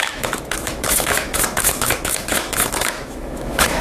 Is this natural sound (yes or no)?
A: no